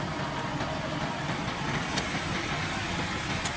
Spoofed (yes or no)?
no